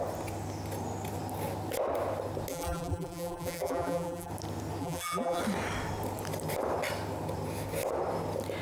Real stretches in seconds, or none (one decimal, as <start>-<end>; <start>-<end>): 0.0-2.5; 4.3-4.8; 5.4-8.6